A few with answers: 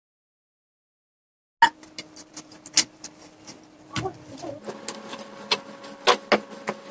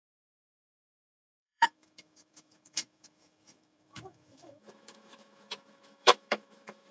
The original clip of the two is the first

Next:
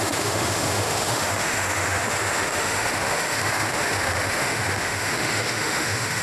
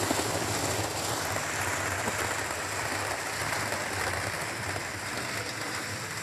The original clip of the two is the second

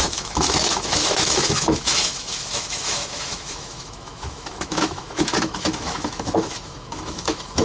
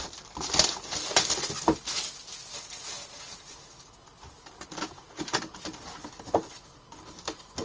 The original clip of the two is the second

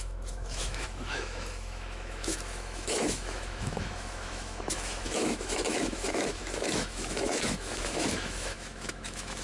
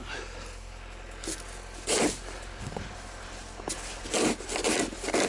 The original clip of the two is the second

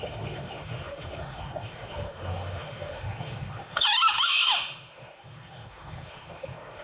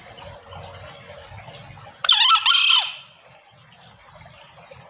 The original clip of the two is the second